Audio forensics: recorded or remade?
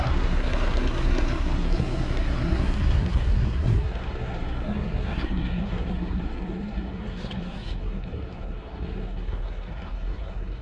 remade